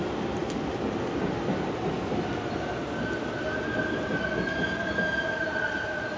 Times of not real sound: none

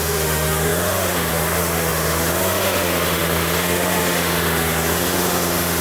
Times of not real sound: 0.0-5.8 (autoencoder, DAC-VAE)

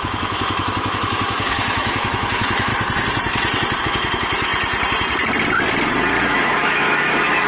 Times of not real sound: 0.0-2.7 (autoencoder, DAC-VAE); 3.8-4.5; 6.2-7.5